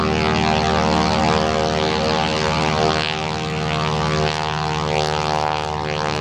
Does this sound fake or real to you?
real